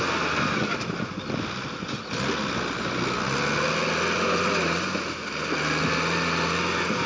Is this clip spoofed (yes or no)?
no